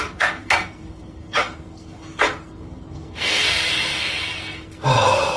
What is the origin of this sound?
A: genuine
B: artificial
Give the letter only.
B